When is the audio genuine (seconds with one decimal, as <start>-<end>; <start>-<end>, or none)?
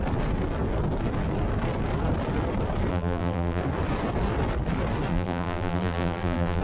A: 0.0-2.9; 3.6-5.1